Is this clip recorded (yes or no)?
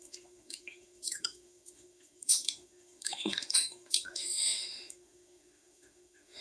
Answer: no